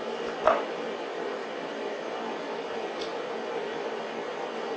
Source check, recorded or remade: recorded